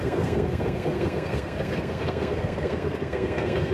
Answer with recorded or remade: remade